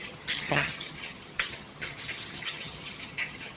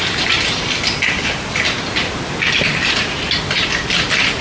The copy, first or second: first